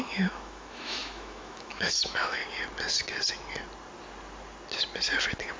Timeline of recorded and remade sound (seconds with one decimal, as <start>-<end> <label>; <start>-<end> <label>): 0.0-2.4 remade; 2.4-5.6 recorded